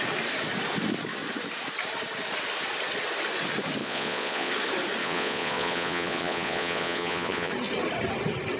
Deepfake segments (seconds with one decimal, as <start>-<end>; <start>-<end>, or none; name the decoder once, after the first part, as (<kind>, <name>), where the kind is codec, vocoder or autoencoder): 3.8-4.5 (vocoder, Vocos); 5.0-7.5